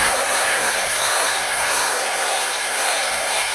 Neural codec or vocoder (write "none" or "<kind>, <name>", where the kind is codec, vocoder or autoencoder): codec, SNAC